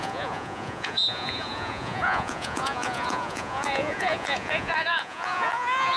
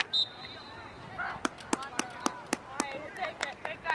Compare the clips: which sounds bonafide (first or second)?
second